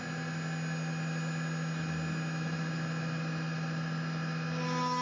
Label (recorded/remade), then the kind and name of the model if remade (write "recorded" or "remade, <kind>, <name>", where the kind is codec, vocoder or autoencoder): recorded